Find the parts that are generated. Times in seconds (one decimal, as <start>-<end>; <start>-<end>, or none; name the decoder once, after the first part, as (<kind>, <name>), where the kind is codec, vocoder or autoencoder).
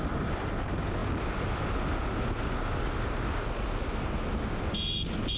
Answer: none